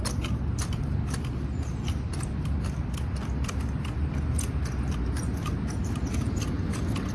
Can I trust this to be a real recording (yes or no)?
yes